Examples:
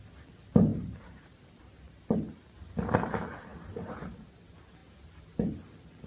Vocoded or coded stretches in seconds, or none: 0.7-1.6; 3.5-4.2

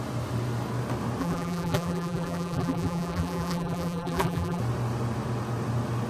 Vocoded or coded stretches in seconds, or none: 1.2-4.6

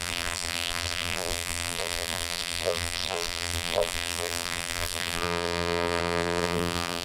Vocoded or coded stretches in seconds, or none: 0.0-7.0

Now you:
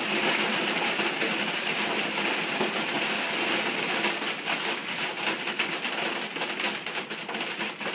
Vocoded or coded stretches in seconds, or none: none